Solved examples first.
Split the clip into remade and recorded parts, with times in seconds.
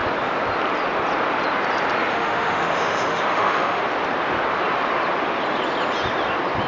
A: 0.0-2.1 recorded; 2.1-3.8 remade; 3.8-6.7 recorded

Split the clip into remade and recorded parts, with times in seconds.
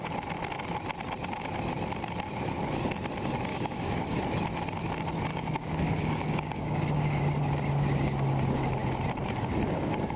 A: 0.0-3.5 recorded; 3.5-4.2 remade; 4.2-5.3 recorded; 5.3-7.2 remade; 7.2-10.2 recorded